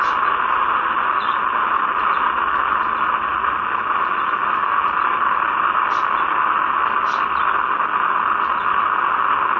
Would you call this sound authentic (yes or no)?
yes